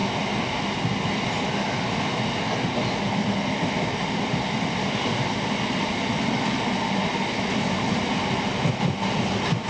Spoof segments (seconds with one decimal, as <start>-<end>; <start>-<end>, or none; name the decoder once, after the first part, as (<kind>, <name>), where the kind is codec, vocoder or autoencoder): none